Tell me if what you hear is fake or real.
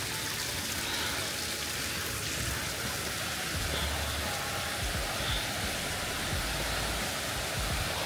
real